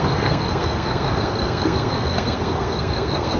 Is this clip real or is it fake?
fake